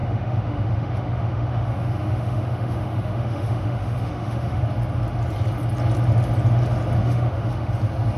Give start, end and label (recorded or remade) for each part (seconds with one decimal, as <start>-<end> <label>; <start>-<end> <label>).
0.0-4.6 remade; 4.6-7.0 recorded; 7.0-7.7 remade; 7.7-8.2 recorded